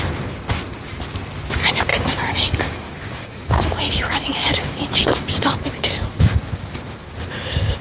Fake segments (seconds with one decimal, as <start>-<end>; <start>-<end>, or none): 1.9-6.6; 7.0-7.8